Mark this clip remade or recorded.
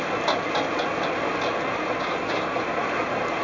recorded